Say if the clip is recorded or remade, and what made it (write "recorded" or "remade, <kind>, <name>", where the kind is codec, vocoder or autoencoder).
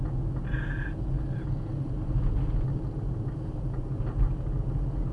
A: recorded